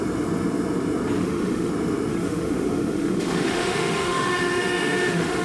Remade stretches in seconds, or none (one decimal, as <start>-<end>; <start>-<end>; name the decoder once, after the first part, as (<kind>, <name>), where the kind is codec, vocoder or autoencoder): 1.2-1.7 (autoencoder, DAC-VAE); 2.1-5.4